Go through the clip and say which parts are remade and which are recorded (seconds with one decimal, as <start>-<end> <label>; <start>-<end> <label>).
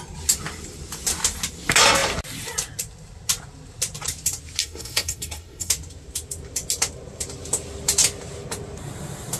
0.0-4.6 recorded; 4.6-5.7 remade; 5.7-9.4 recorded